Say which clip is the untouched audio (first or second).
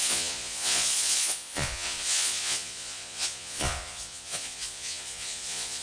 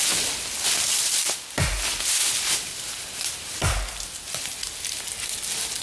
second